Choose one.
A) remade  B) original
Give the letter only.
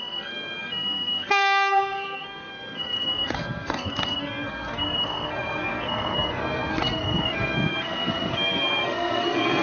A